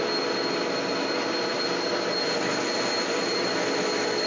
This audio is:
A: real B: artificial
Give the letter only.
A